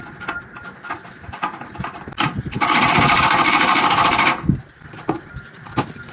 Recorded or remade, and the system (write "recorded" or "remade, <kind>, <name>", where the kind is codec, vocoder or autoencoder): remade, vocoder, BigVGAN v2